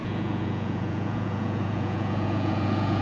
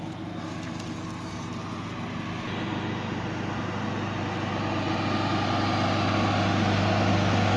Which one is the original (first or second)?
second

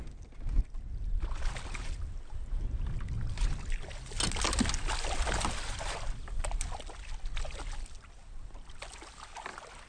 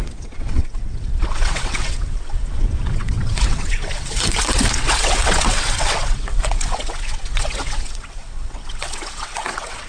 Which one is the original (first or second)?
first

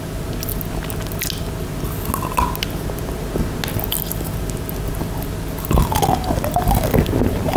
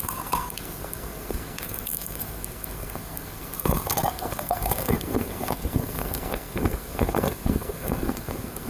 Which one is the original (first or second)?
first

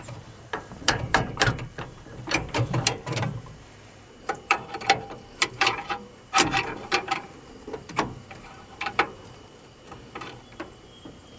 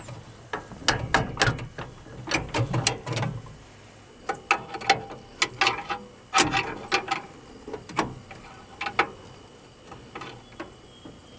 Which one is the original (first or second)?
second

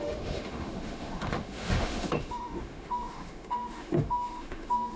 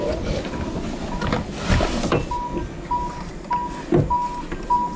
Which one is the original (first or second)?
second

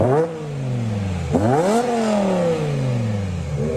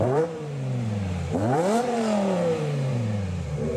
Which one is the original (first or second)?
first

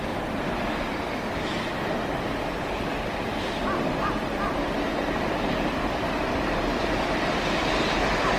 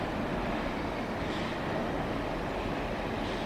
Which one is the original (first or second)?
second